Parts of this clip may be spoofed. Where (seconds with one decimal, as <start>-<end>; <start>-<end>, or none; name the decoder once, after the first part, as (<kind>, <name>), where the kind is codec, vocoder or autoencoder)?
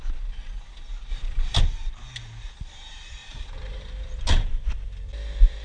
1.1-1.6 (vocoder, BigVGAN v2); 3.2-4.5